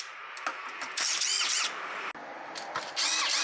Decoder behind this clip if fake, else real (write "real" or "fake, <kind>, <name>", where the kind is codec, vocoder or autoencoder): real